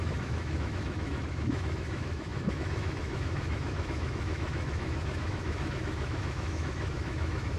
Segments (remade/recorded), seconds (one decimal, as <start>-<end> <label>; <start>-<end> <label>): 0.0-7.6 remade